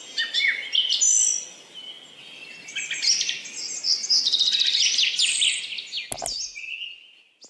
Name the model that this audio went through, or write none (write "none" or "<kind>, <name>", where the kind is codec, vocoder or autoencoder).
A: none